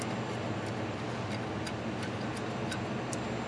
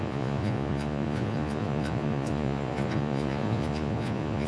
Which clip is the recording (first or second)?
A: first